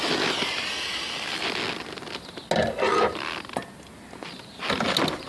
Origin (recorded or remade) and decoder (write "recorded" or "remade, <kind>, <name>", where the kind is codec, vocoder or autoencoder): recorded